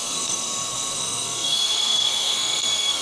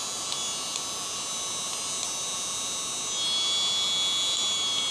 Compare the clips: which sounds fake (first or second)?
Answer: first